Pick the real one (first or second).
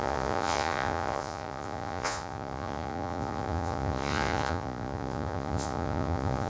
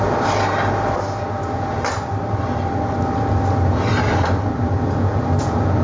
second